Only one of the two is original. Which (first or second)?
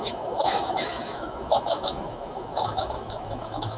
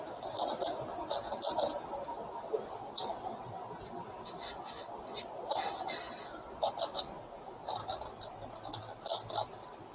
second